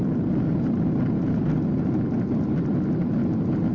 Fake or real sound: real